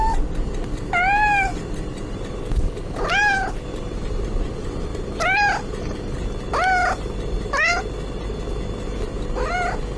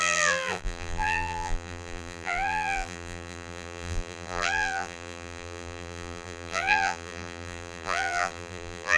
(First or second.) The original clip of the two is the first